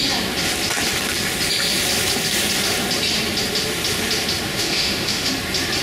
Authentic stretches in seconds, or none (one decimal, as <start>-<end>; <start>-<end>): 0.0-4.5; 5.3-5.8